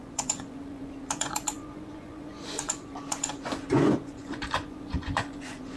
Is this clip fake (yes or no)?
yes